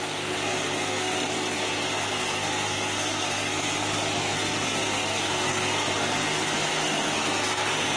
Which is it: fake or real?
fake